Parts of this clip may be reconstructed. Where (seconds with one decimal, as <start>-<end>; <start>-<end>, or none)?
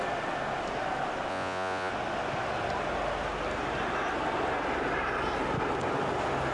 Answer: 1.3-1.9